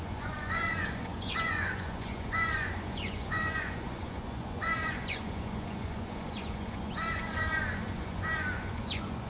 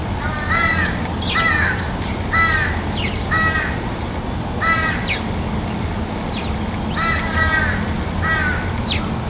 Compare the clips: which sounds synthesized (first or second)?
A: first